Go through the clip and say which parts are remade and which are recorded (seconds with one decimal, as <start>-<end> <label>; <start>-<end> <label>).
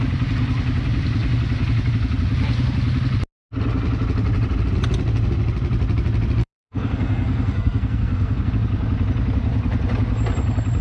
0.0-6.4 recorded; 6.4-8.5 remade; 8.5-10.8 recorded